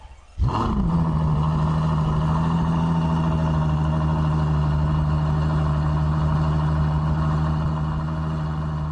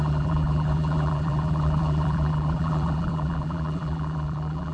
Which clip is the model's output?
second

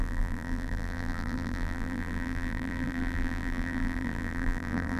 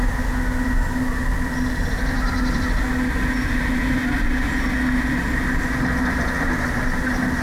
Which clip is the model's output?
first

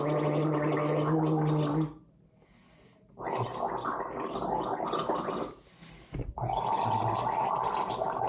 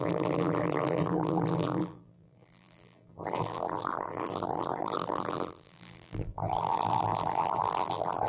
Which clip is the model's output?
second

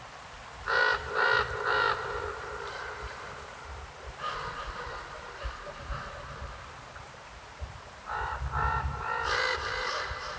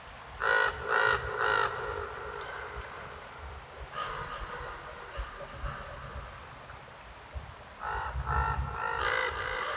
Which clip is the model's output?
first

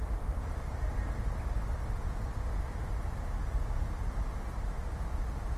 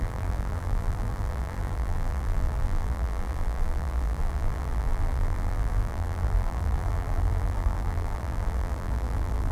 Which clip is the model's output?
second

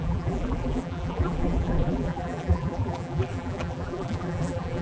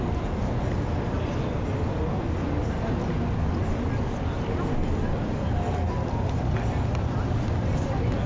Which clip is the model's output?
first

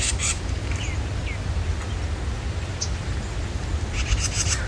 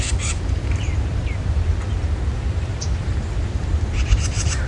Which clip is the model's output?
second